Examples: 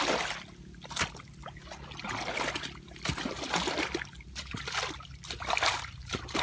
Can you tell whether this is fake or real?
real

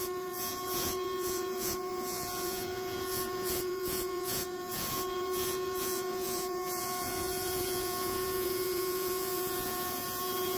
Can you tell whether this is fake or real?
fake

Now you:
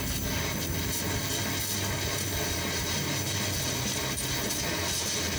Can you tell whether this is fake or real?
real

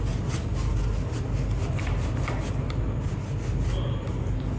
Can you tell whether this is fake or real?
real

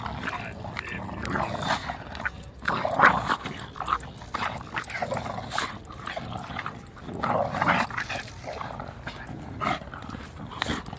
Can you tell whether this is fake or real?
real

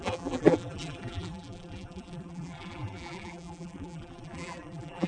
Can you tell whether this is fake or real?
fake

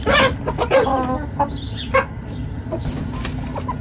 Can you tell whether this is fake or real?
real